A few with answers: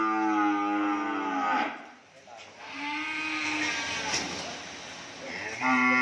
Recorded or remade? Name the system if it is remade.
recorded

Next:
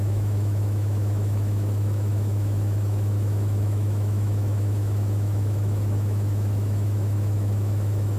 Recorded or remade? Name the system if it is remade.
remade, autoencoder, DAC-VAE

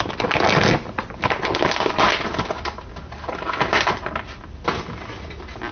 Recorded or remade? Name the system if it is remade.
recorded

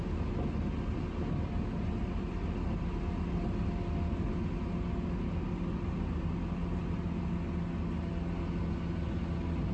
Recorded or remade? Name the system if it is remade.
recorded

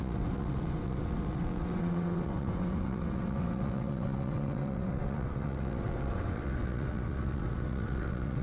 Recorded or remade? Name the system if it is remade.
remade, vocoder, WaveNeXt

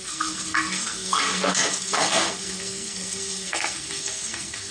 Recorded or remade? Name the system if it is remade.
remade, codec, SNAC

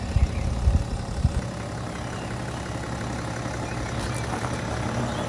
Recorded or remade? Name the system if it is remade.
recorded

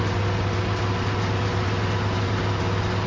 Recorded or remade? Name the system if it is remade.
recorded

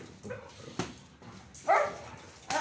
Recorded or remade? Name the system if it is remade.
recorded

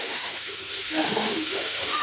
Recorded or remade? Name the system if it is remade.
remade, autoencoder, DAC-VAE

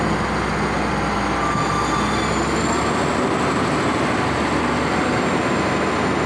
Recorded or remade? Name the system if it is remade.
recorded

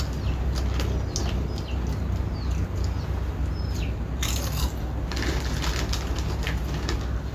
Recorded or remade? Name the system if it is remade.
recorded